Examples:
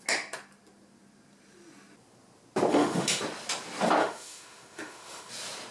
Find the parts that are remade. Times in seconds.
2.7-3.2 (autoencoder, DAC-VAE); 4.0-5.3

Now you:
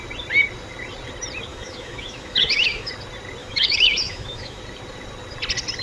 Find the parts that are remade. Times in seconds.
1.5-2.9 (autoencoder, DAC-VAE); 3.4-4.6

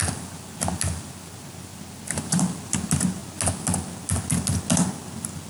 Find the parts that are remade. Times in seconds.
none

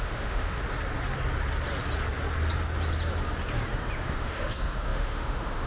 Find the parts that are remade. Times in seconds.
0.0-0.6 (autoencoder, DAC-VAE); 4.0-5.7

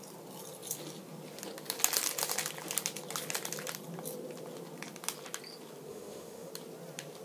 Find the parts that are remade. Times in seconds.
5.9-6.5 (autoencoder, DAC-VAE)